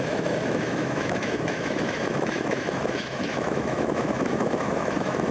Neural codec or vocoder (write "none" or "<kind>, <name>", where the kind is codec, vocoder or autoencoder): autoencoder, DAC-VAE